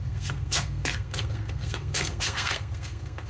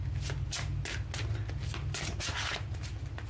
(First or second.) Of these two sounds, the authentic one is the second